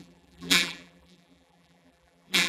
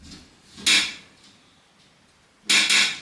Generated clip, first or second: first